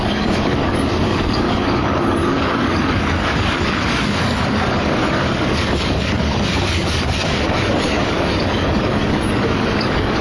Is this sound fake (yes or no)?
yes